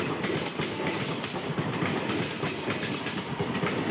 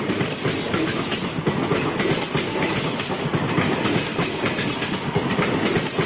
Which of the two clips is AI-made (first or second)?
first